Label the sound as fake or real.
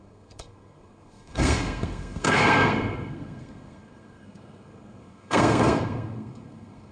fake